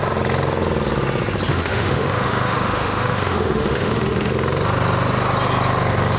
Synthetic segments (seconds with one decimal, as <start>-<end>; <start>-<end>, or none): 1.5-4.3